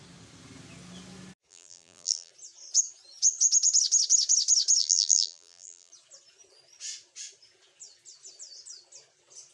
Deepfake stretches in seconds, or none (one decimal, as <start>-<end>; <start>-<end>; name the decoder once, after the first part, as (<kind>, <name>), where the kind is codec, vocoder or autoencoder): 1.5-2.3 (vocoder, BigVGAN v2); 4.8-5.9